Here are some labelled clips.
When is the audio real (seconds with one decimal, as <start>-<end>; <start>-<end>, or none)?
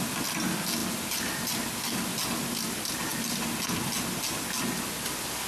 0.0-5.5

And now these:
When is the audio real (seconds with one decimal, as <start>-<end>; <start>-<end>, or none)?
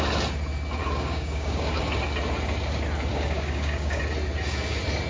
0.0-0.8; 2.0-3.1; 4.0-5.1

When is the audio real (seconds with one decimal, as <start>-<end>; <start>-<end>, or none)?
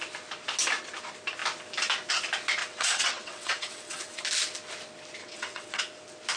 0.0-2.6; 4.2-5.2; 5.8-6.4